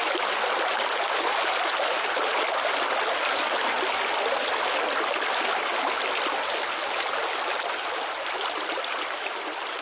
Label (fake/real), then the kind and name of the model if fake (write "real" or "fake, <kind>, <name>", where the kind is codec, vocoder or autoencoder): real